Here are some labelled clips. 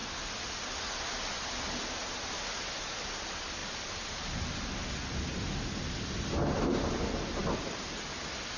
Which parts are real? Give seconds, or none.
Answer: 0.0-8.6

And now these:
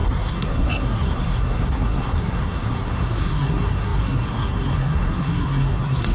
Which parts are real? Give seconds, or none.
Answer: none

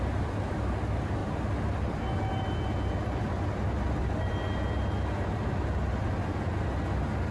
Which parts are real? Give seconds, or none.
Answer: 0.0-7.3

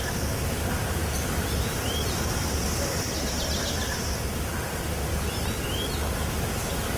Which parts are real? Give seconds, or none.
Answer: 0.0-7.0

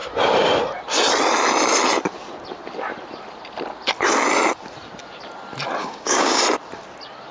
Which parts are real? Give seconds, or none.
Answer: 0.0-5.8; 6.4-7.3